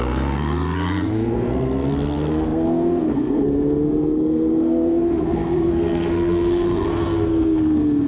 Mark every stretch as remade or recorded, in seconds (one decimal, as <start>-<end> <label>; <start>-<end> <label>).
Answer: 0.0-8.1 remade